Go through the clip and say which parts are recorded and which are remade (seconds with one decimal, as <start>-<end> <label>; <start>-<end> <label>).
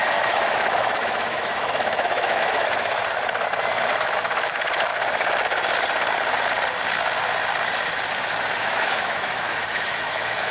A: 0.0-3.0 remade; 3.0-4.0 recorded; 4.0-4.9 remade; 4.9-8.6 recorded; 8.6-10.5 remade